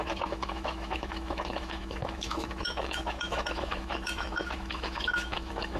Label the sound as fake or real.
fake